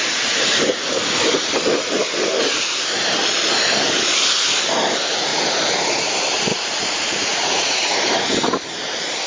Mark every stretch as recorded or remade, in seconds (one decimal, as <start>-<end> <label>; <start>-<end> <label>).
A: 0.0-6.5 recorded; 6.5-7.9 remade; 7.9-9.3 recorded